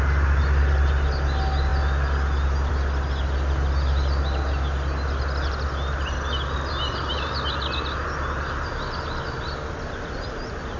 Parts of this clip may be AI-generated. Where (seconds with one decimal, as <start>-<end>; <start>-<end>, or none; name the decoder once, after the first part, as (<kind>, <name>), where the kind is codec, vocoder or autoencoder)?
none